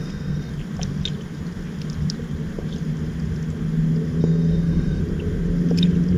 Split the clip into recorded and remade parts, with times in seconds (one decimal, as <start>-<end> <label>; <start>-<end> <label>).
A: 0.0-0.5 remade; 0.5-4.2 recorded; 4.2-5.0 remade; 5.0-6.2 recorded